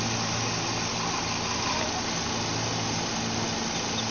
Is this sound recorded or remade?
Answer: recorded